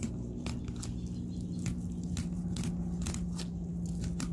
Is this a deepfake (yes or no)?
no